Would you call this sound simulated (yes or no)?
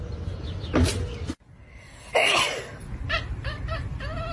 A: no